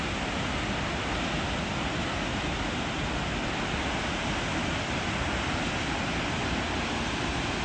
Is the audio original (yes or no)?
yes